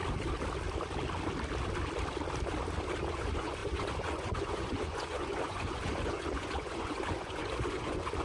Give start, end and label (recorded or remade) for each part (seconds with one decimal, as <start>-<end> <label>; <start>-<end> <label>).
0.0-3.1 recorded; 3.1-8.2 remade